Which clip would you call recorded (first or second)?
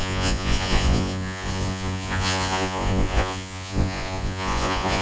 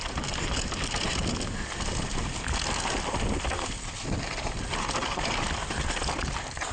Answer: second